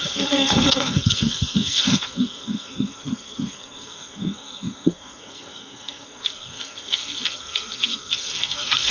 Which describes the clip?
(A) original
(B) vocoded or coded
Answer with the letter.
B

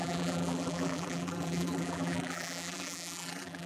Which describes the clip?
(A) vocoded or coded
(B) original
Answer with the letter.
A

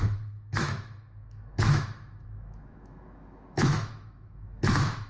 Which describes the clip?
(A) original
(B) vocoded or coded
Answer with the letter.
B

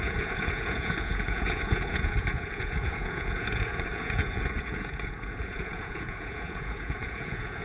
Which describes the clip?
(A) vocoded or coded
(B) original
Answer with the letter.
A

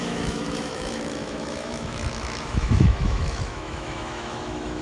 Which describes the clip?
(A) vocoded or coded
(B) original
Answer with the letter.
A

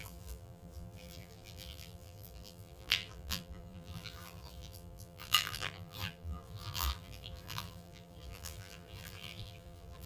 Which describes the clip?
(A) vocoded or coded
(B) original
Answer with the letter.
A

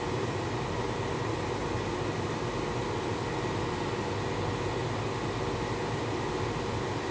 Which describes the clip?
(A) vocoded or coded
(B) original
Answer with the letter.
B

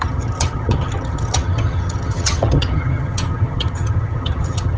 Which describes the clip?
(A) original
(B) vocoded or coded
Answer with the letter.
B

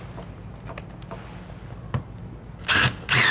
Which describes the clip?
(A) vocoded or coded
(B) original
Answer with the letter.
B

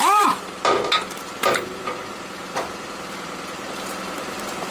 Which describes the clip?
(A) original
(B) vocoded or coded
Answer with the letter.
B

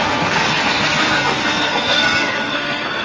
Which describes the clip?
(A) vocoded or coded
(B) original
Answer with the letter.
A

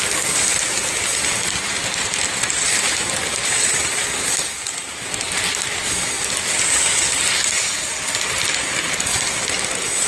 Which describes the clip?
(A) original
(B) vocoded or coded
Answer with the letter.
A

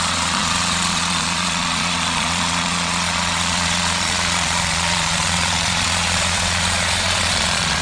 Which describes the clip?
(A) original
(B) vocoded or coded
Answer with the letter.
B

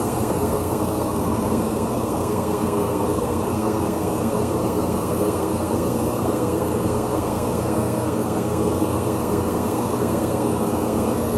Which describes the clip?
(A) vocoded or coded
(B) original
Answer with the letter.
A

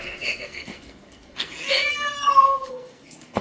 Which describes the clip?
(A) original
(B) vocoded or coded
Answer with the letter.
B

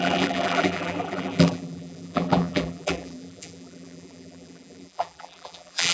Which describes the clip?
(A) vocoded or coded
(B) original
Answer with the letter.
A